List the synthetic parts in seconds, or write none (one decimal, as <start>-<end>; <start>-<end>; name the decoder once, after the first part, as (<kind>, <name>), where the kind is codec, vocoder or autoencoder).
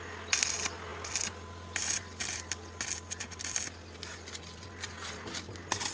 none